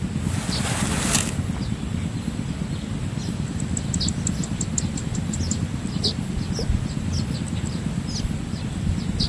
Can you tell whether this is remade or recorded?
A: recorded